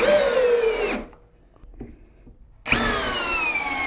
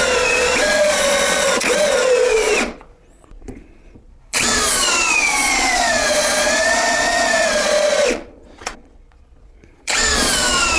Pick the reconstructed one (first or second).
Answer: second